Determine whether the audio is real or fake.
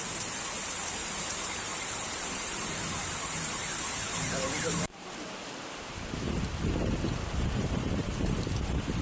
fake